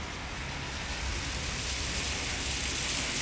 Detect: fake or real real